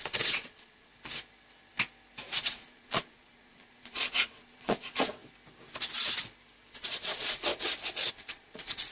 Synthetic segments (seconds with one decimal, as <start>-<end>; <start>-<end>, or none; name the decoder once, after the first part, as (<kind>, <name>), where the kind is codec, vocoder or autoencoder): 0.0-0.9 (vocoder, Vocos); 2.4-5.2; 6.8-7.5; 8.1-8.9